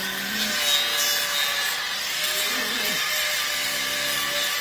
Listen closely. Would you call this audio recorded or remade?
recorded